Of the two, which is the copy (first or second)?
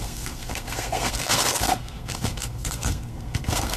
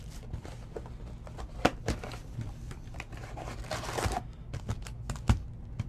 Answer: first